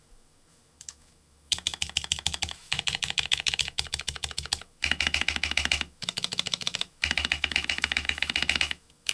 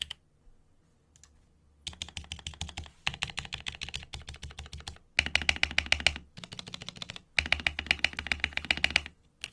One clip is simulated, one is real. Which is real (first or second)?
second